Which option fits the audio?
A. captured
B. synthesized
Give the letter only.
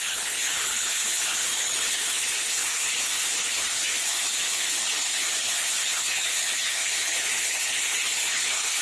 B